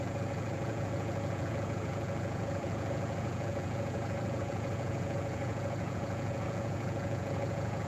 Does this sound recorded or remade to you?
remade